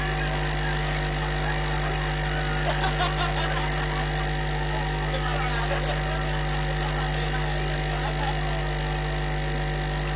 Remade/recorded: recorded